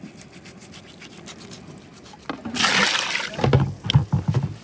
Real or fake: real